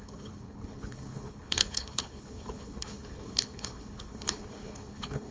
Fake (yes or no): yes